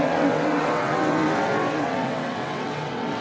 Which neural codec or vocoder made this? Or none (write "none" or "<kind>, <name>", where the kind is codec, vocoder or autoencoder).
vocoder, WaveNeXt